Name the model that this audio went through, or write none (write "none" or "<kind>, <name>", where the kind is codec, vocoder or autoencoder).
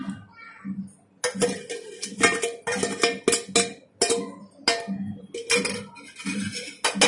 none